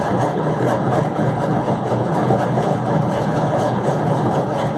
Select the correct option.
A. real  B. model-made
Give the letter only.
B